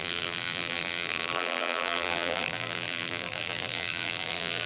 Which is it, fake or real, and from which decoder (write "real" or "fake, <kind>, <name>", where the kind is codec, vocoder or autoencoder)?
fake, vocoder, BigVGAN v2